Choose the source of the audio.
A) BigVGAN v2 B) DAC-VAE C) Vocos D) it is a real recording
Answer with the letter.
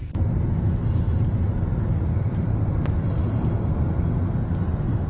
D